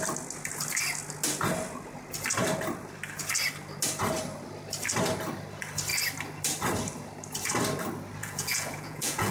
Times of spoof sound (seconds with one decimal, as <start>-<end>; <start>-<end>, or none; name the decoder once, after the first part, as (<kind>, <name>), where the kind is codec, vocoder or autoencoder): 8.2-9.3 (vocoder, Vocos)

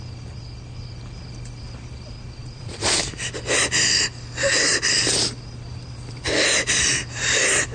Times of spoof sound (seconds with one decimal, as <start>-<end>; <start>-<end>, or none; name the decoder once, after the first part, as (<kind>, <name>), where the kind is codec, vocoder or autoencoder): 2.4-3.0 (vocoder, Vocos)

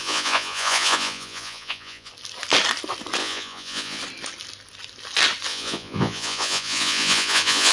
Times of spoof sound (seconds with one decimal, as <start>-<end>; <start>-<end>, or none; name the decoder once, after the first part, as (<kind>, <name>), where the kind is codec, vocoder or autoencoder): 0.0-2.1 (vocoder, Vocos); 3.2-4.0; 5.5-7.7

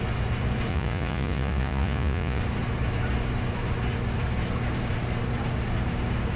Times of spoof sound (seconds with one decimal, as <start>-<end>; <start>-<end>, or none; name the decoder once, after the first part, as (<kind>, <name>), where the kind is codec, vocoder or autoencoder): 0.7-2.4 (vocoder, Vocos)

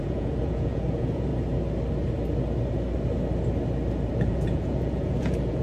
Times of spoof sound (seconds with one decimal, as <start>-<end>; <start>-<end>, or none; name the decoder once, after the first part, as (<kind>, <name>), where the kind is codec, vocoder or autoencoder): 0.0-1.3 (vocoder, Vocos); 4.1-5.6